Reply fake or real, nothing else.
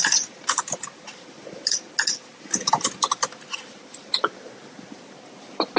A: real